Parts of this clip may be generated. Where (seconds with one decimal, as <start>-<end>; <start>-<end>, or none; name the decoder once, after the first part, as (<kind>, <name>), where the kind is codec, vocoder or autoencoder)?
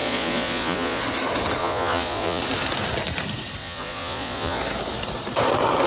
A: 0.0-1.0 (vocoder, Vocos); 1.6-2.4; 3.6-4.6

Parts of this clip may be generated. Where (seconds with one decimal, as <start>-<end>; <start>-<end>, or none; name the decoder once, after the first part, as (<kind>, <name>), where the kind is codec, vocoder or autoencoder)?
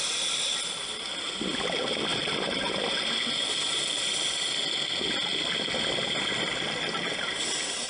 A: none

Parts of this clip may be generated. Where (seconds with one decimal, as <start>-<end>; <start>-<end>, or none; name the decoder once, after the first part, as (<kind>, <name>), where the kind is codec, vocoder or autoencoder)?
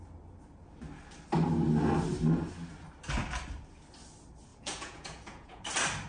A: 4.5-5.6 (vocoder, Vocos)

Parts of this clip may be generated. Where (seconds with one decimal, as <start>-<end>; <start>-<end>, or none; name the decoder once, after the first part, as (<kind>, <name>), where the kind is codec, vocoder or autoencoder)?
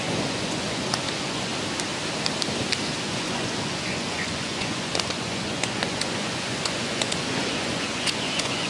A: 0.0-1.5 (vocoder, Vocos); 3.0-8.7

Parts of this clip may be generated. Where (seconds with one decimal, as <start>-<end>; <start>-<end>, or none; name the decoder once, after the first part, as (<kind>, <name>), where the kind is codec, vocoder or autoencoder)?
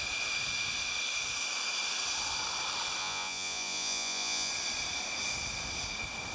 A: 3.0-4.5 (vocoder, Vocos)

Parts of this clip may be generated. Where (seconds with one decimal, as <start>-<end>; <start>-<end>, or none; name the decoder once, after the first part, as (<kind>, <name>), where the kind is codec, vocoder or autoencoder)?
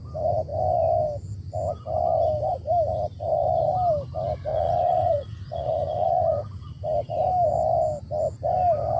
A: 4.5-6.7 (vocoder, Vocos)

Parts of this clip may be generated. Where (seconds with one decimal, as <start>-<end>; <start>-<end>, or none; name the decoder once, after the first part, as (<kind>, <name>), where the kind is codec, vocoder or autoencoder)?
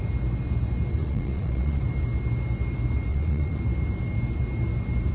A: 1.0-1.8 (vocoder, Vocos); 3.1-3.6